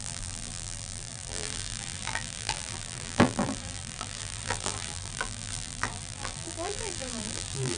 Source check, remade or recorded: remade